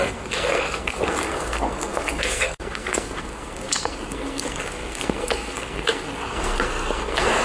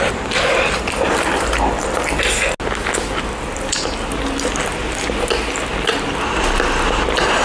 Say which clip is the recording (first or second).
second